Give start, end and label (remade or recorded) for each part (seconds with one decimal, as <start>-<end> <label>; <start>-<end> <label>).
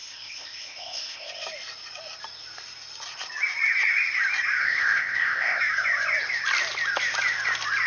0.0-1.3 remade; 1.3-4.6 recorded; 4.6-5.6 remade; 5.6-7.9 recorded